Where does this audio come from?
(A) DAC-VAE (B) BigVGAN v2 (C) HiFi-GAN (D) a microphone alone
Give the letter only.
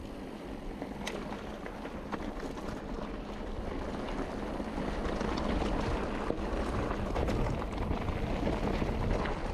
D